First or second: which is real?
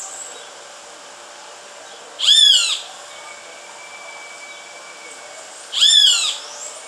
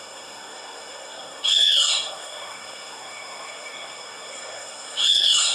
first